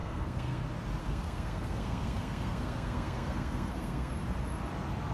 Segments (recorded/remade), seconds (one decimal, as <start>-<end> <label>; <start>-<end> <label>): 0.0-0.6 remade; 0.6-1.0 recorded; 1.0-4.1 remade; 4.1-5.1 recorded